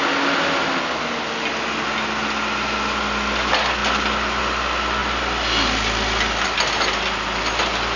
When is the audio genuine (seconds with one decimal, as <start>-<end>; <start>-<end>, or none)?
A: 0.0-8.0